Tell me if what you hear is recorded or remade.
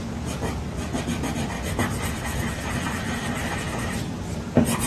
recorded